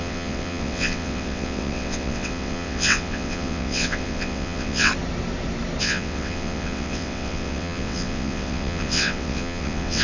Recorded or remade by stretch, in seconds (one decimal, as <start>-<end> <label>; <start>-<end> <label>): 0.0-4.9 remade; 4.9-5.8 recorded; 5.8-10.0 remade